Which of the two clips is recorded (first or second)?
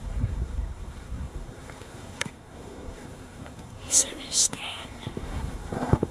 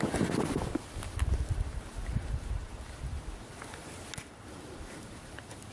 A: second